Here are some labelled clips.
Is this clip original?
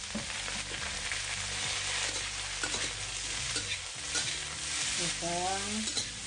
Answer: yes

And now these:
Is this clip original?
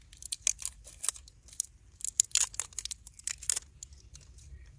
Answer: yes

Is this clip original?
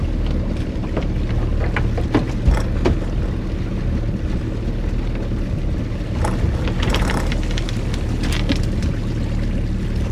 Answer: yes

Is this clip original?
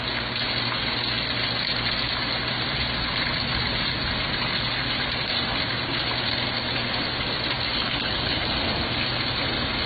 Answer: yes